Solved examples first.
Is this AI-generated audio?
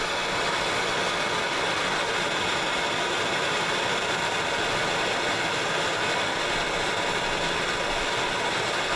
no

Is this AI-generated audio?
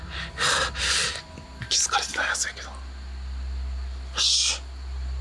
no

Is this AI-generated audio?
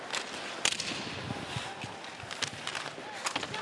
no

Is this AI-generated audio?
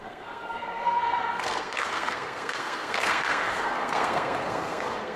yes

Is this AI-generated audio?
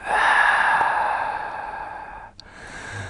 no